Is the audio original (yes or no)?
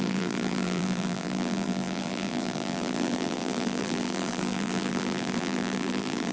no